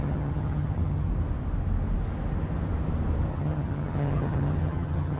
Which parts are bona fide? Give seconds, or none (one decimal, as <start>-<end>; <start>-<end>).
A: 1.1-3.3